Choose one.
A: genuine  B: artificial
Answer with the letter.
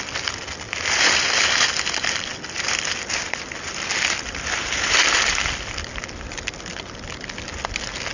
A